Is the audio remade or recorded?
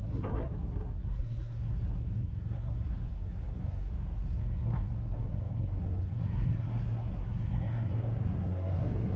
remade